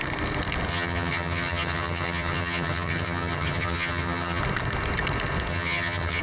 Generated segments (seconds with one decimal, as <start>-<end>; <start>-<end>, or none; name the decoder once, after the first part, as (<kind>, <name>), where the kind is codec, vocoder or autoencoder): 0.7-4.4 (vocoder, HiFi-GAN); 5.5-6.2